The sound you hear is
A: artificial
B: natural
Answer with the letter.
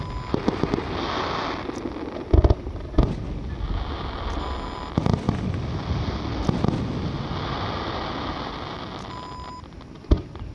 B